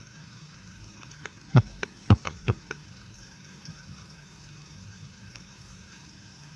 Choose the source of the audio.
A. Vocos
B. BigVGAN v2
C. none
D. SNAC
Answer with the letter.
D